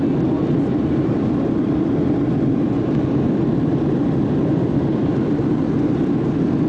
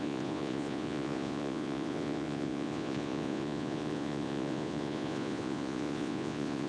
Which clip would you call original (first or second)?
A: first